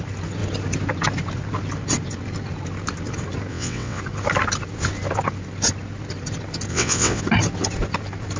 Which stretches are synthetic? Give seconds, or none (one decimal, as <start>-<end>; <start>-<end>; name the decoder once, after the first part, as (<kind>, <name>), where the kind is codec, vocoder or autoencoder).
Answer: 3.5-4.0 (vocoder, WaveNeXt); 6.7-7.2